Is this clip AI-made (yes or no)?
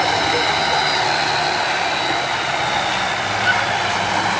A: no